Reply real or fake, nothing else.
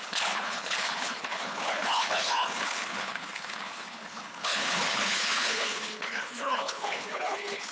fake